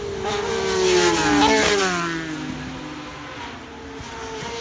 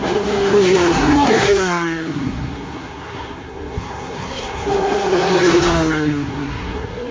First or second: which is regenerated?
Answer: second